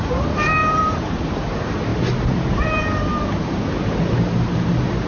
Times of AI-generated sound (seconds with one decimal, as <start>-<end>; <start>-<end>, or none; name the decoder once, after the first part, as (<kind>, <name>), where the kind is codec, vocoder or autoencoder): 0.0-5.1 (vocoder, BigVGAN v2)